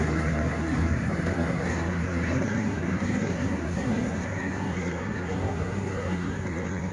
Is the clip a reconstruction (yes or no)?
yes